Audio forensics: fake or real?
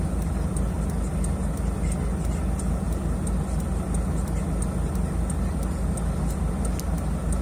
real